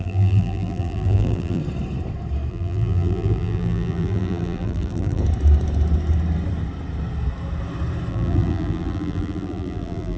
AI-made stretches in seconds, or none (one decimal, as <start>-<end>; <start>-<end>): 0.0-1.6; 2.5-5.2; 8.1-10.2